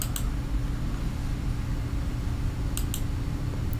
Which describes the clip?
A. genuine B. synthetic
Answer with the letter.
A